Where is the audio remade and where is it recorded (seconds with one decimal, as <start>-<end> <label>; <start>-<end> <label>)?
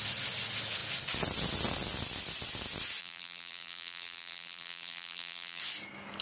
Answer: 0.0-3.0 recorded; 3.0-5.6 remade; 5.6-6.2 recorded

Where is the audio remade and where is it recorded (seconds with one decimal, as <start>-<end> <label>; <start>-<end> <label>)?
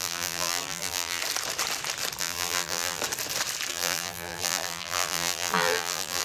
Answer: 0.0-1.2 remade; 1.2-2.2 recorded; 2.2-3.0 remade; 3.0-3.7 recorded; 3.7-6.2 remade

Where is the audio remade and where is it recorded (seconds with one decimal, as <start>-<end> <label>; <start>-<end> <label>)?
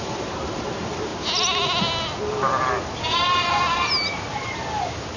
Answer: 0.0-5.2 recorded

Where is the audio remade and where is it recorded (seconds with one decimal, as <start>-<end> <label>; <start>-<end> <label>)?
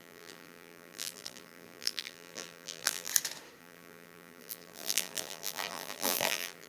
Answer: 0.0-3.1 remade; 3.1-3.6 recorded; 3.6-6.7 remade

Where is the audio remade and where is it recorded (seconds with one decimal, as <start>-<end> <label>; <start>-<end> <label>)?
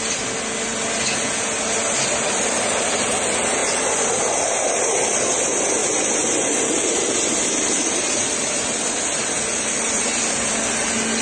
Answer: 0.0-3.6 recorded; 3.6-5.1 remade; 5.1-5.8 recorded; 5.8-10.0 remade; 10.0-11.2 recorded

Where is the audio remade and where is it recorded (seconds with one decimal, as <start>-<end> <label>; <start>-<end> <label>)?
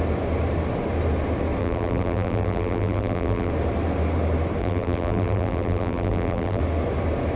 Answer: 0.0-1.6 recorded; 1.6-3.5 remade; 3.5-4.6 recorded; 4.6-6.6 remade; 6.6-7.4 recorded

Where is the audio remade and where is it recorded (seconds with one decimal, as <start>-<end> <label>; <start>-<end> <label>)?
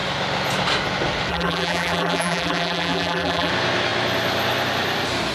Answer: 0.0-1.3 recorded; 1.3-3.5 remade; 3.5-5.3 recorded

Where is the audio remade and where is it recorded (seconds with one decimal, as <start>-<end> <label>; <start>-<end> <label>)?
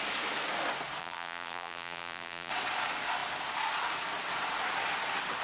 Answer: 0.0-1.0 recorded; 1.0-2.5 remade; 2.5-5.4 recorded